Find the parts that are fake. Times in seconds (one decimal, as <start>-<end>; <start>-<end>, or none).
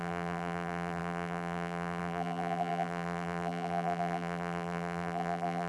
0.0-5.7